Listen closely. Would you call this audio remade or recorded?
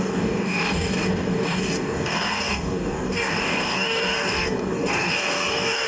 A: remade